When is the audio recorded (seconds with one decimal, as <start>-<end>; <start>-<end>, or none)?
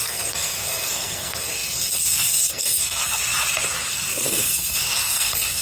3.2-3.9